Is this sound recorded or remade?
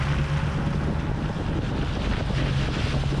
recorded